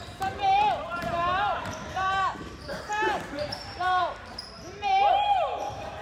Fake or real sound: fake